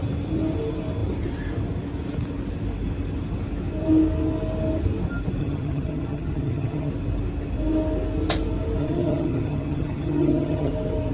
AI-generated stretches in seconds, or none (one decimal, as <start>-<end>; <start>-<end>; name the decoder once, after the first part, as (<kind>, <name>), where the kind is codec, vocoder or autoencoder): 5.4-6.9 (vocoder, HiFi-GAN); 8.8-10.7